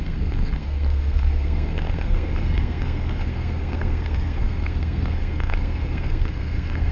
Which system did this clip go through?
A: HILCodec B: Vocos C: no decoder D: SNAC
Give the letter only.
D